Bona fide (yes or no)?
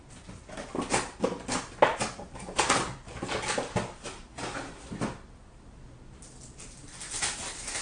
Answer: yes